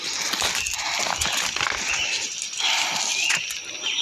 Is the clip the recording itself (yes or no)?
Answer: yes